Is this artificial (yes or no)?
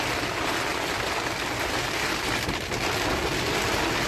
no